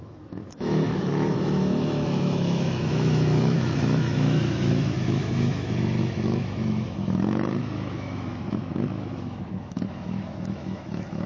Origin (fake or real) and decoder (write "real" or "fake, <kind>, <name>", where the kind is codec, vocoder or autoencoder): fake, autoencoder, DAC-VAE